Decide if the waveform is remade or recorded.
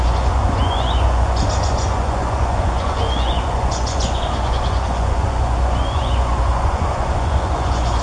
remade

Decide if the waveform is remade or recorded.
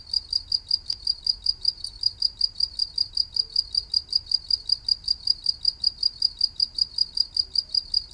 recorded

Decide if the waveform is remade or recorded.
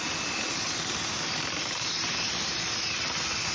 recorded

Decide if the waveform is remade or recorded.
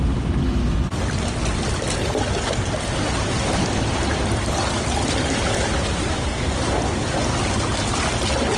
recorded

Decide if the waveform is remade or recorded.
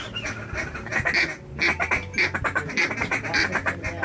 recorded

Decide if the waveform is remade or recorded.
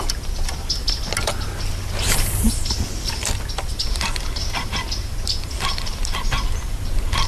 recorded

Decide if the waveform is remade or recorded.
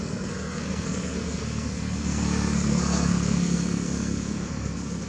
remade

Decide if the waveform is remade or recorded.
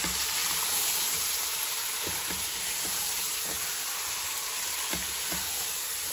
remade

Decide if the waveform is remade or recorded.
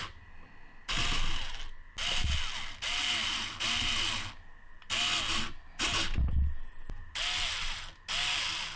recorded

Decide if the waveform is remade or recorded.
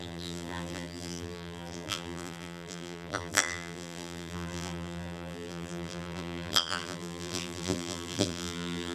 remade